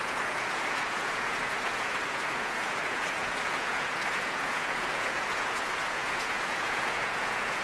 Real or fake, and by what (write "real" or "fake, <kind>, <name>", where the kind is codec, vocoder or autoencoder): fake, vocoder, Vocos